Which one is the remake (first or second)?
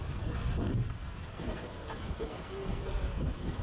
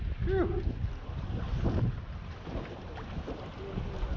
first